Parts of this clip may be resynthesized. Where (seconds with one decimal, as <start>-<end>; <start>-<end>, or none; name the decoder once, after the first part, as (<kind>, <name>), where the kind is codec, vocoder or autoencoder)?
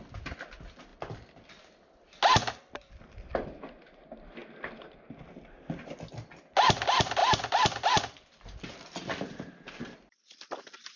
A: none